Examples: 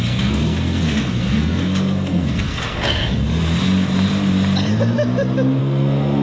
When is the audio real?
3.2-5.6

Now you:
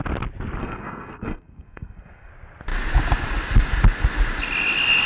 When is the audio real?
0.0-0.6; 2.3-5.1

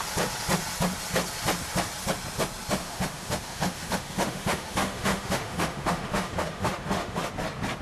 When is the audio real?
0.0-2.8; 7.3-7.8

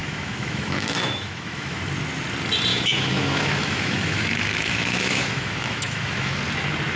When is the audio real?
1.8-2.7; 6.4-7.0